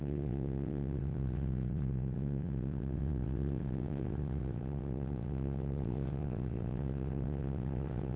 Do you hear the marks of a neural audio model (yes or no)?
yes